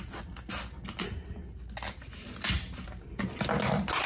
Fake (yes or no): no